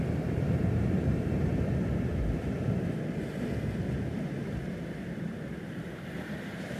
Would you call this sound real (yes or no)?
yes